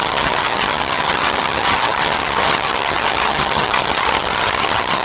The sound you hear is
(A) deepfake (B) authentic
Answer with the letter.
A